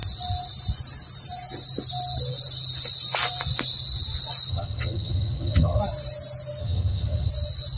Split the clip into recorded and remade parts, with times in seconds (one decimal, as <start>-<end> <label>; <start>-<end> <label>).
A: 0.0-4.5 recorded; 4.5-5.8 remade; 5.8-6.6 recorded; 6.6-7.3 remade; 7.3-7.8 recorded